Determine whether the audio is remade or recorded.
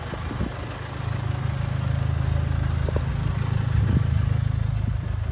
recorded